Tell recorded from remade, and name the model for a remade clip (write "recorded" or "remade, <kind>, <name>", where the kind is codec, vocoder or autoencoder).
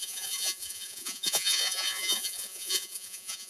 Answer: remade, vocoder, Vocos